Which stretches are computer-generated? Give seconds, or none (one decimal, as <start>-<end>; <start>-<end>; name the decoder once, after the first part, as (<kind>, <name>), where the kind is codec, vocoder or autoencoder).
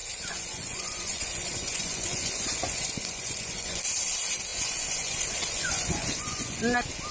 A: 0.0-3.8 (vocoder, Vocos); 4.5-6.6